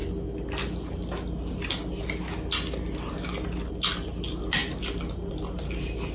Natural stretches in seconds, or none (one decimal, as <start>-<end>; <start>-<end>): 0.0-6.1